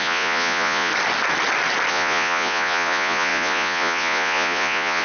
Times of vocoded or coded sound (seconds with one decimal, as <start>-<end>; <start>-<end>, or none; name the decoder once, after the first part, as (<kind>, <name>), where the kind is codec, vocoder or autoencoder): 0.0-0.9 (vocoder, Vocos); 1.9-5.0